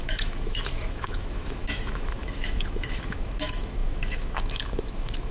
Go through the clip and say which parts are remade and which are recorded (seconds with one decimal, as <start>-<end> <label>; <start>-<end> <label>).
0.0-5.3 remade